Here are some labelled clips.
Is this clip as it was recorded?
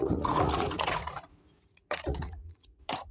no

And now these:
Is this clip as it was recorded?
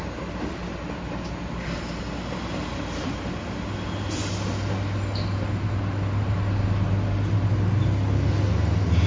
yes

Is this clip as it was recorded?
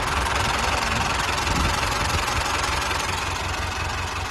yes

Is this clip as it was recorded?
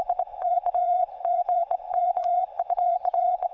no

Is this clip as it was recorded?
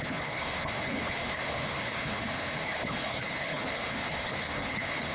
no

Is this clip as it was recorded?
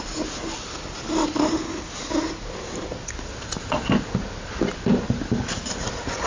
yes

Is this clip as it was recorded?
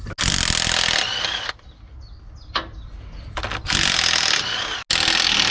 yes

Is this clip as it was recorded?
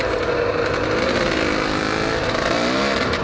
yes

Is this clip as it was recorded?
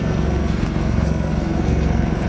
no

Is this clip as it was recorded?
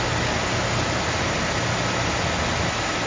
yes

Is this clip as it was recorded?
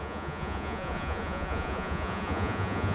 no